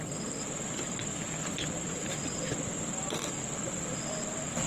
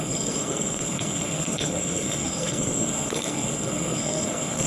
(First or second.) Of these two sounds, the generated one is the second